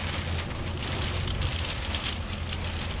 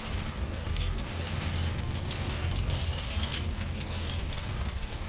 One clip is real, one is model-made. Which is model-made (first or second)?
second